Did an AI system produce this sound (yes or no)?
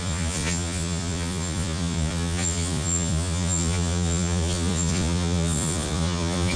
yes